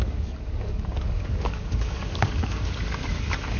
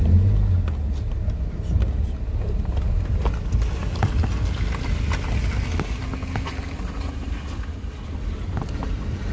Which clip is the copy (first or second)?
first